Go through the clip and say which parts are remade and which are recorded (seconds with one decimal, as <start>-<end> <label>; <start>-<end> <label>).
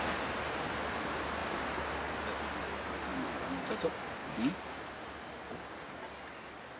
0.0-6.8 recorded